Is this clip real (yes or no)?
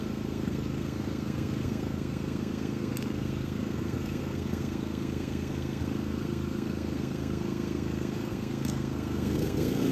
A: no